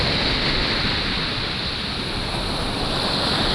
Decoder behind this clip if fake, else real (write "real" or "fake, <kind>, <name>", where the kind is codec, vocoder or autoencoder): real